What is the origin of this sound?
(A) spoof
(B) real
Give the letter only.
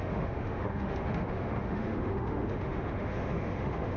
A